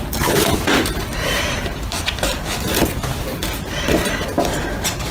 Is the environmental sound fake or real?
fake